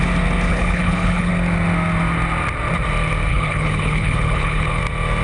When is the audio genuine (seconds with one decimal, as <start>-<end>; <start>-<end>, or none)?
0.0-0.5; 1.3-3.3; 4.8-5.2